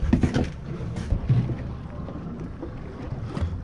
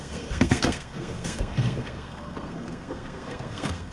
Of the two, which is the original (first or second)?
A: first